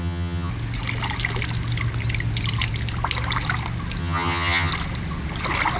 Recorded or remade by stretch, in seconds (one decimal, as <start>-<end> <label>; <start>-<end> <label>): 0.0-0.5 remade; 0.5-4.0 recorded; 4.0-4.7 remade; 4.7-5.8 recorded